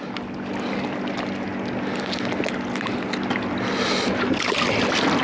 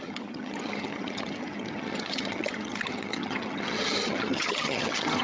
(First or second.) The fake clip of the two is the second